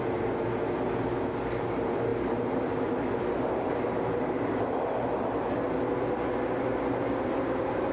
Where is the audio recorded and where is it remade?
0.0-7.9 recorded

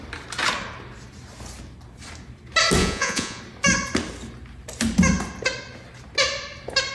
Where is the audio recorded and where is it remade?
0.0-2.8 recorded; 2.8-3.4 remade; 3.4-6.9 recorded

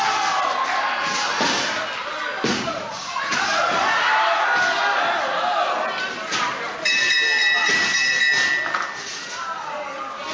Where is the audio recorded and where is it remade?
0.0-2.5 recorded; 2.5-3.8 remade; 3.8-10.3 recorded

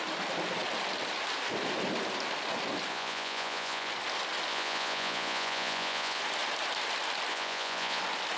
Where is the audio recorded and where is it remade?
0.0-2.9 recorded; 2.9-3.9 remade; 3.9-4.5 recorded; 4.5-6.2 remade; 6.2-7.3 recorded; 7.3-8.0 remade; 8.0-8.4 recorded

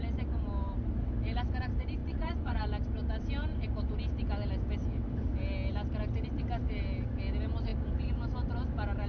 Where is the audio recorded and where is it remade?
0.0-2.0 recorded; 2.0-2.6 remade; 2.6-9.1 recorded

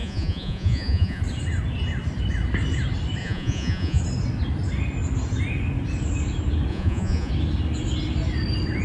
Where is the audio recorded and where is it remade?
0.0-1.2 remade; 1.2-3.2 recorded; 3.2-4.0 remade; 4.0-6.7 recorded; 6.7-7.3 remade; 7.3-8.8 recorded

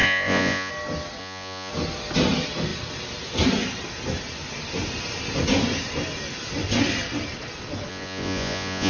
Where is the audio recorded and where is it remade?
0.0-0.7 remade; 0.7-1.2 recorded; 1.2-1.7 remade; 1.7-7.9 recorded; 7.9-8.9 remade